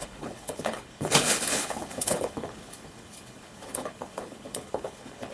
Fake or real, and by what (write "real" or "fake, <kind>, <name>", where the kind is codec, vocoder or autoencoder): fake, codec, HILCodec